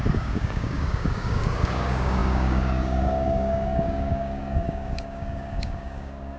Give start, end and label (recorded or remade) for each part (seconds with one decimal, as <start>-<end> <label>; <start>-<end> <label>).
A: 0.0-6.4 remade